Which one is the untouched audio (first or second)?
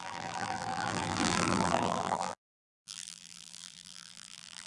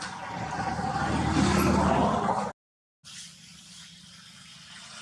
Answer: second